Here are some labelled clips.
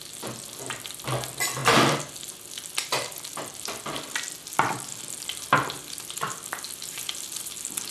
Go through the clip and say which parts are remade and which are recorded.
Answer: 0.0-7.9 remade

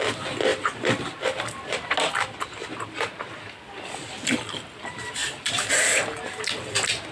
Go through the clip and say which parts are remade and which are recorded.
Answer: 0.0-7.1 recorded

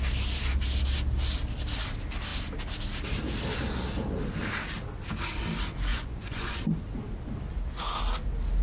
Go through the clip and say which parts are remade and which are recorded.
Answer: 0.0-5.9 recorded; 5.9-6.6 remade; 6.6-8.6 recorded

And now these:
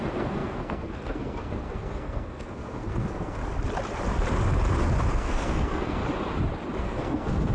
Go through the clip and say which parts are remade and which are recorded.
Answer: 0.0-3.4 remade; 3.4-5.1 recorded; 5.1-6.0 remade; 6.0-6.8 recorded; 6.8-7.5 remade

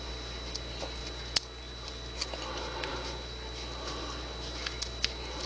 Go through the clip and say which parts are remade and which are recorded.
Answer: 0.0-5.5 recorded